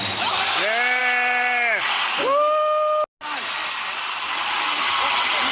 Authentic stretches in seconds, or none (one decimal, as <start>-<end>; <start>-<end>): 0.0-5.5